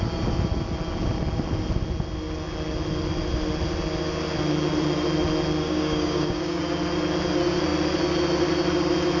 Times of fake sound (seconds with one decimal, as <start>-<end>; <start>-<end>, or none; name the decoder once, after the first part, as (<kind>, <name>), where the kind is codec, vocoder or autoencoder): 5.6-6.6 (codec, DAC)